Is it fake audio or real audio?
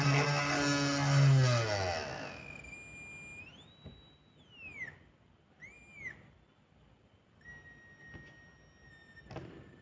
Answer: real